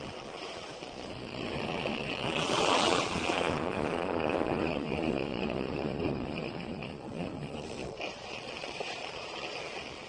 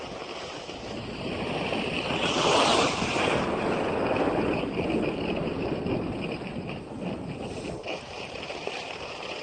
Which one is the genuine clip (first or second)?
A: second